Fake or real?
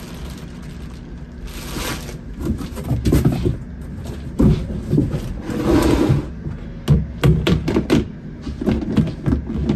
real